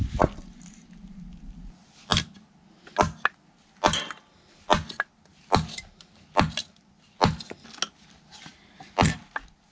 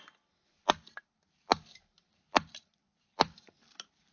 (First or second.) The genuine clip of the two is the first